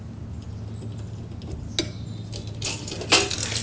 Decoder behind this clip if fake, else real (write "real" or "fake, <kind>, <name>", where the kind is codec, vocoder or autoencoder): real